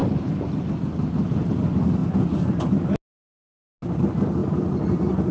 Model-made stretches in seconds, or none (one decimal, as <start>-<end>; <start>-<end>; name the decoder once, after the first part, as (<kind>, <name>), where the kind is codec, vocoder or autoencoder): 2.0-2.5 (vocoder, BigVGAN v2); 4.4-5.3